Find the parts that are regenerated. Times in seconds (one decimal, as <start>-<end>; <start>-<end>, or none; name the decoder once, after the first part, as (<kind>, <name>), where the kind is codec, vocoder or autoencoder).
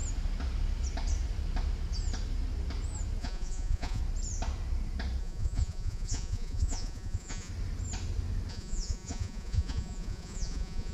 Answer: 3.2-4.0 (vocoder, Vocos); 5.2-7.5; 8.5-10.9